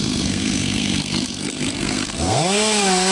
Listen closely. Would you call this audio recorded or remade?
remade